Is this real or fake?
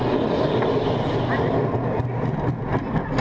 real